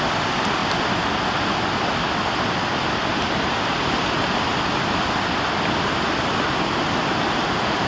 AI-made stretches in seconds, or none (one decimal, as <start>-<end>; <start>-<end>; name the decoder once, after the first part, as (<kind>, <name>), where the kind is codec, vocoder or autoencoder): 3.1-4.0 (vocoder, BigVGAN v2)